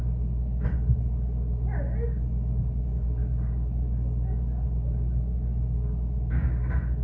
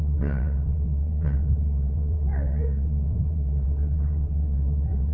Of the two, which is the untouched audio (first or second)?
first